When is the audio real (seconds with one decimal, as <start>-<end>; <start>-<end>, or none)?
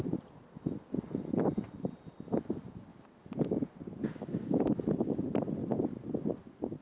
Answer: 0.0-6.8